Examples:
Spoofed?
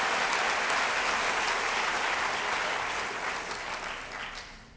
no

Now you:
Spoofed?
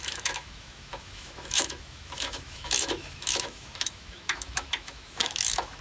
yes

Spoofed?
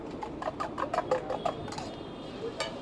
no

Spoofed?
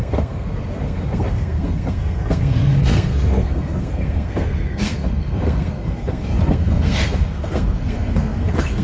yes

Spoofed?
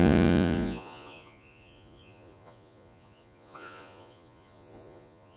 yes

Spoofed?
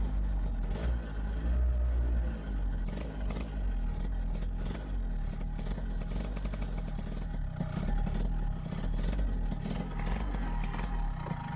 no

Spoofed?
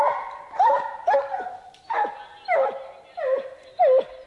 no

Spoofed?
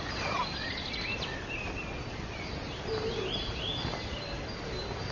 no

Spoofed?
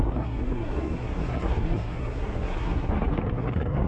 yes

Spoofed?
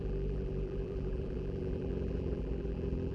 yes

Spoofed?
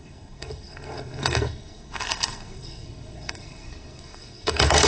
yes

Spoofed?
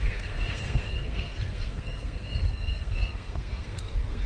yes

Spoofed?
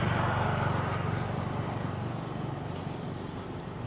no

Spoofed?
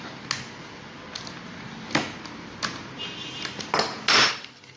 no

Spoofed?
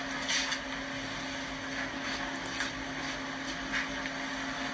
no